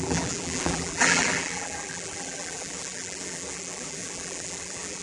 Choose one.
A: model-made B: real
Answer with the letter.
A